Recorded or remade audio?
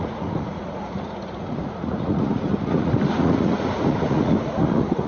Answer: remade